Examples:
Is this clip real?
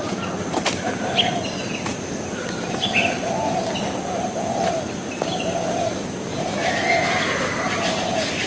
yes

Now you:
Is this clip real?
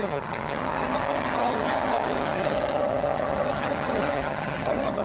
no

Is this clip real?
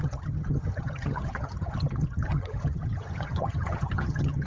no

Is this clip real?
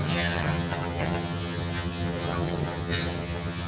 no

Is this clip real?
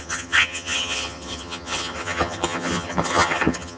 no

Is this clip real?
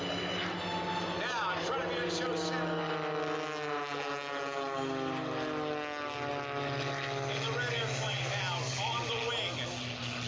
yes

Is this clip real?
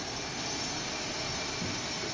yes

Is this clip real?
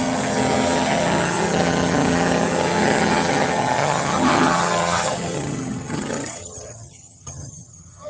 no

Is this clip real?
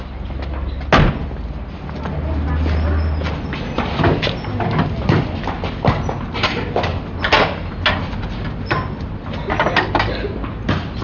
yes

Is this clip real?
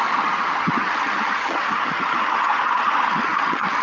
no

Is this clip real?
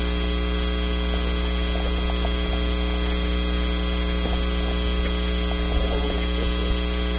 yes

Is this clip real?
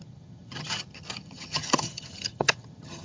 no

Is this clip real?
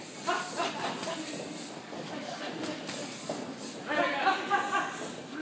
yes